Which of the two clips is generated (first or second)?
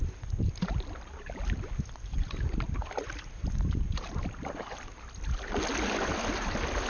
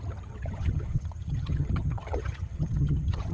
second